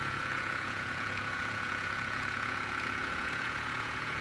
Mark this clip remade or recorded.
remade